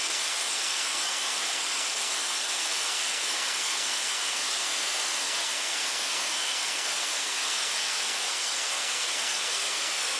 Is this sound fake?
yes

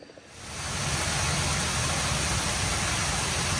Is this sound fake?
no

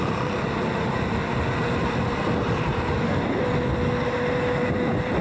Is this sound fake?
no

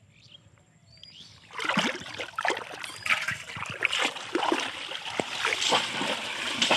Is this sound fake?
no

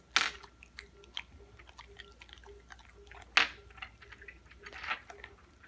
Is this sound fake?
no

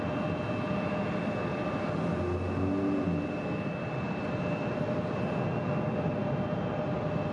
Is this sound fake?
no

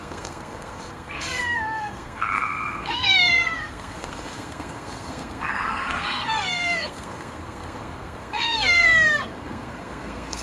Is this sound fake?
yes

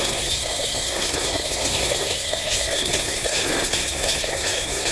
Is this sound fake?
yes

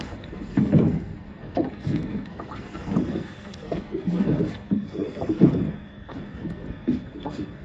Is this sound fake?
yes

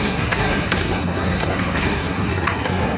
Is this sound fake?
yes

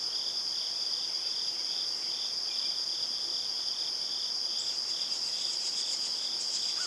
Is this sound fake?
no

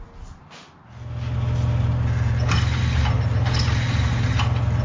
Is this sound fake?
no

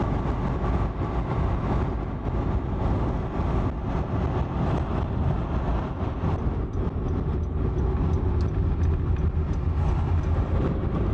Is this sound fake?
no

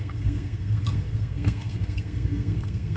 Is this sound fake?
yes